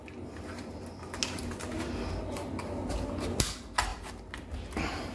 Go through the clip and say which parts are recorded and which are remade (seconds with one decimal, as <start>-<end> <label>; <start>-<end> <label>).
0.0-5.1 recorded